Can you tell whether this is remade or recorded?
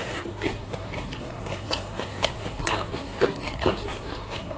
remade